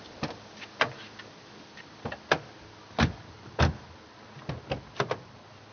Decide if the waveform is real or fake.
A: real